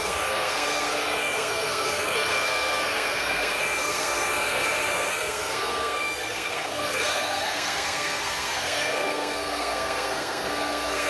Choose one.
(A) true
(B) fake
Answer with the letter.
B